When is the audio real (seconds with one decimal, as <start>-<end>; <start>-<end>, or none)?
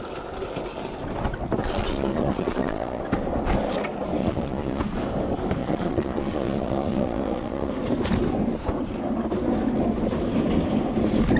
0.0-1.6; 3.0-4.2; 4.8-5.6; 7.7-11.4